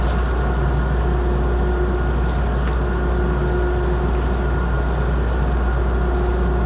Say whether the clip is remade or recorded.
recorded